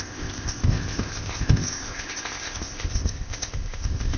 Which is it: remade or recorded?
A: remade